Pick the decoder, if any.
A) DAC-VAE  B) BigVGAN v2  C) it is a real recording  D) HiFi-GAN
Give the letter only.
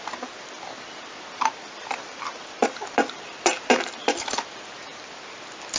B